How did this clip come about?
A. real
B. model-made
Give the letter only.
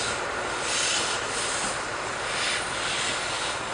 A